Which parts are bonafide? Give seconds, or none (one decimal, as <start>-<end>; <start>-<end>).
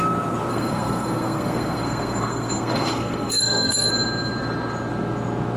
0.0-0.5; 3.9-5.6